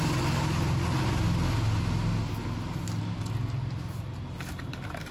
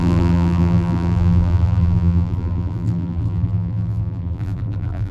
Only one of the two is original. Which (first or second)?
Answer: first